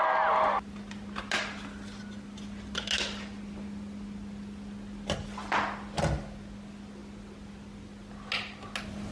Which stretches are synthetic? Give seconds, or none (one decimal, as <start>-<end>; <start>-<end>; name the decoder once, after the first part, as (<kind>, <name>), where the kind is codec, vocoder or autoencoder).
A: none